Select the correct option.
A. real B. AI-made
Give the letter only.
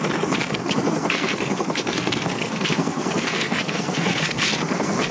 B